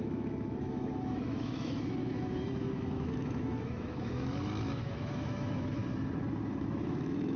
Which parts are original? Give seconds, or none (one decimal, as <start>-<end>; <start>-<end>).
5.8-6.6